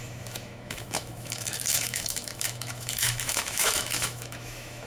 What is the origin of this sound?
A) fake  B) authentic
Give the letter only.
A